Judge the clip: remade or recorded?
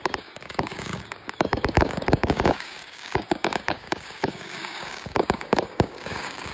remade